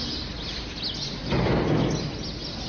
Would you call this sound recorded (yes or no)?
yes